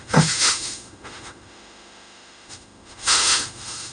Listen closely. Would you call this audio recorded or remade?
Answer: remade